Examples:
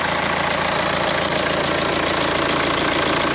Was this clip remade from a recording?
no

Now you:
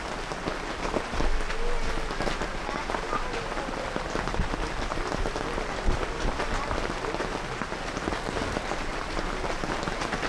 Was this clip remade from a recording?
no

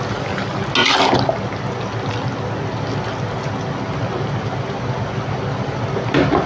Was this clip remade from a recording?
no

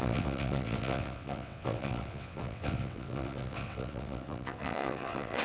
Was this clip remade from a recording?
yes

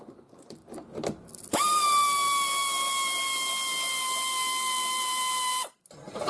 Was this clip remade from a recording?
no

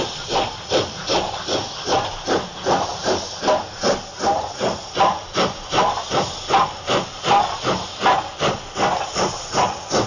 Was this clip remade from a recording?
no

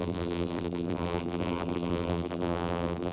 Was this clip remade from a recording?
yes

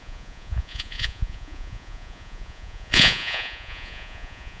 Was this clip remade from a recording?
yes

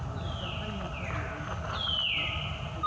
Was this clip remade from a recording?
no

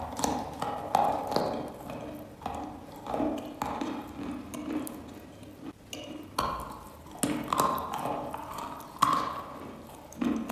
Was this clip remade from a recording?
no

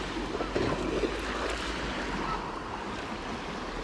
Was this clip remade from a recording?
no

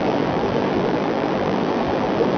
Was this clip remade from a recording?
yes